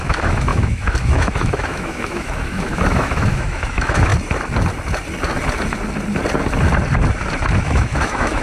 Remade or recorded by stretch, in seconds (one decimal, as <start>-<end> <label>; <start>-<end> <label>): 0.0-4.1 remade; 4.1-7.6 recorded; 7.6-8.4 remade

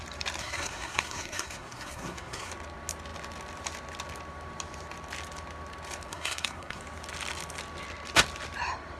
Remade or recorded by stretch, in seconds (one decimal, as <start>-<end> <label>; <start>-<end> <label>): 0.0-0.4 recorded; 0.4-2.5 remade; 2.5-6.1 recorded; 6.1-6.8 remade; 6.8-9.0 recorded

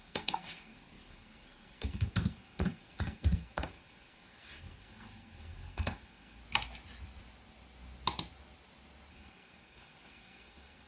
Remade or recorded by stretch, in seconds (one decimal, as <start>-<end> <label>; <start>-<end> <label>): 0.0-6.4 remade; 6.4-9.1 recorded; 9.1-10.9 remade

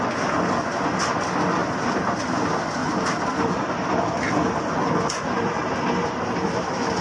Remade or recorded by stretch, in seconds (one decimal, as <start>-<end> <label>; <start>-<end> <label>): 0.0-1.6 recorded; 1.6-2.2 remade; 2.2-2.8 recorded; 2.8-4.0 remade; 4.0-7.0 recorded